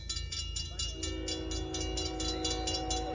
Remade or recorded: recorded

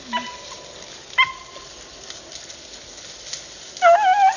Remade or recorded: recorded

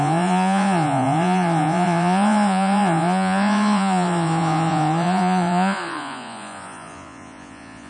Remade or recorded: remade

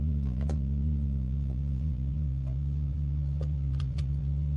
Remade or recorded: remade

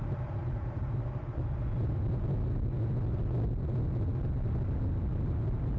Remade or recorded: recorded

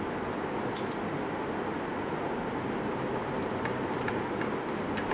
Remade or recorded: recorded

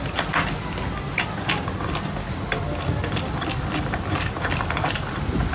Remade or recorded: recorded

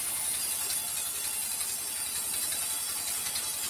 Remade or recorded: recorded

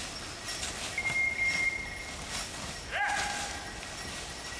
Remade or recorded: recorded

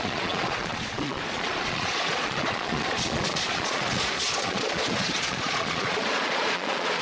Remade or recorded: remade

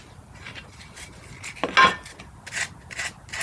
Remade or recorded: recorded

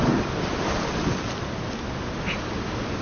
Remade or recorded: recorded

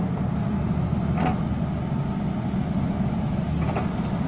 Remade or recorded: recorded